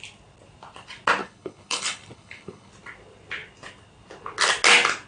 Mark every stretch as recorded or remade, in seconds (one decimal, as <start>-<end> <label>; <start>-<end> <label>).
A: 0.0-1.2 recorded; 1.2-2.7 remade; 2.7-5.1 recorded